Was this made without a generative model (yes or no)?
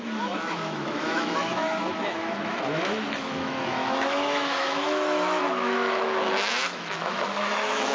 no